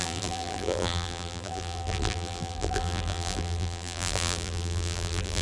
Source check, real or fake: fake